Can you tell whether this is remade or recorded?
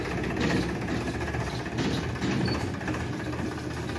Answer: recorded